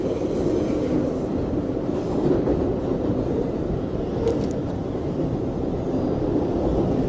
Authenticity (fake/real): real